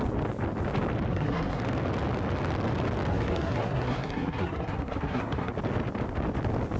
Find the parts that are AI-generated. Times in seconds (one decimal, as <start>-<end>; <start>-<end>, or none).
1.1-1.6; 3.1-5.5